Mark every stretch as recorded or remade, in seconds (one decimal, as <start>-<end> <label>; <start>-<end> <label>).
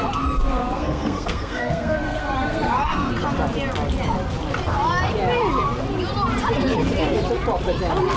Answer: 0.0-0.5 recorded; 0.5-3.1 remade; 3.1-8.2 recorded